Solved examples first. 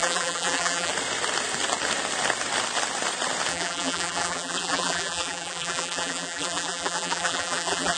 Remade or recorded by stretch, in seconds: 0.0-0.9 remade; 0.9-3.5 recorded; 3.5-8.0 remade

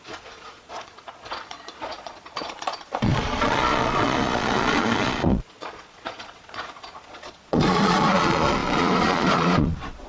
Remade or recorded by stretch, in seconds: 0.0-10.1 remade

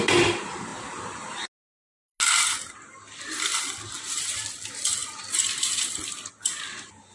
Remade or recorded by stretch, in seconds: 0.0-7.1 recorded

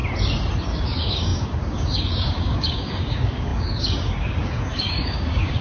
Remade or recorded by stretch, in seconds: 0.0-0.6 recorded; 0.6-5.6 remade